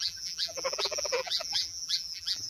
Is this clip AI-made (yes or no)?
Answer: yes